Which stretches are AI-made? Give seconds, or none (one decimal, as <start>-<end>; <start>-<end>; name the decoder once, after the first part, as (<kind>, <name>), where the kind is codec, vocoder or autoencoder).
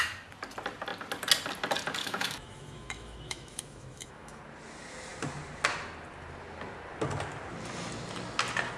2.0-4.4 (autoencoder, DAC-VAE)